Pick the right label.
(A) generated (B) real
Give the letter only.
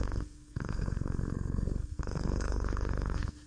A